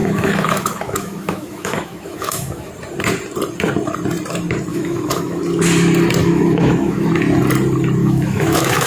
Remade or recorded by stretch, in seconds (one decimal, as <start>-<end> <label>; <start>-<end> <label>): 0.0-2.7 remade; 2.7-4.7 recorded; 4.7-5.4 remade; 5.4-6.2 recorded; 6.2-7.1 remade; 7.1-8.0 recorded; 8.0-8.9 remade